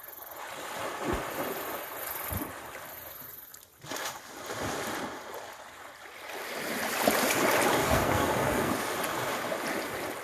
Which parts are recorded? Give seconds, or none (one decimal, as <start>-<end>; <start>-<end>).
0.0-7.8; 8.7-10.2